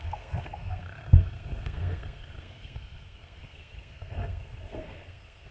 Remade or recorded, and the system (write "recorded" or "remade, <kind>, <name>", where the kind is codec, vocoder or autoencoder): remade, codec, SNAC